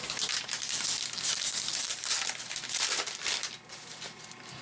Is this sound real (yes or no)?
yes